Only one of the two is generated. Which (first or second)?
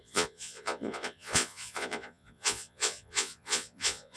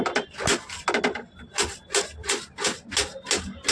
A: first